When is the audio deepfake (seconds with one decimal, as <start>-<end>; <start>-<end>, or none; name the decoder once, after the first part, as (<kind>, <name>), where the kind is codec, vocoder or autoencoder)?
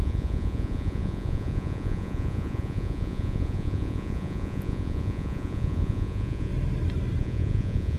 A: 0.0-6.5 (vocoder, Vocos); 7.2-8.0